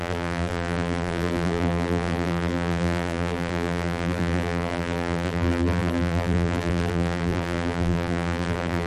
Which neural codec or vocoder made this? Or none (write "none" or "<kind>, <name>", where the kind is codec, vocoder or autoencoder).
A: vocoder, BigVGAN v2